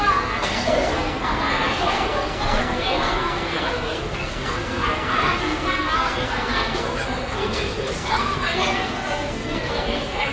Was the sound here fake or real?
fake